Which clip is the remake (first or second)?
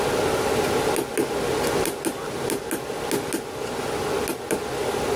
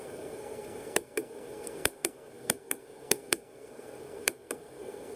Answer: second